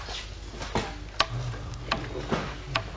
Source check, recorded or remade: recorded